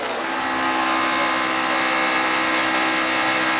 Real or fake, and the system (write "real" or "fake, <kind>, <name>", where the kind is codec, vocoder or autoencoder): real